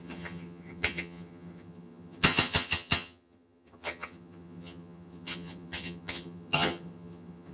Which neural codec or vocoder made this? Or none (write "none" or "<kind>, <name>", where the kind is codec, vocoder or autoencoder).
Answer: vocoder, HiFi-GAN